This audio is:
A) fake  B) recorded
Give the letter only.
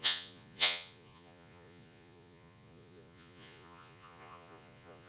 A